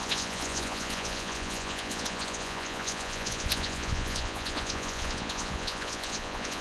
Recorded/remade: remade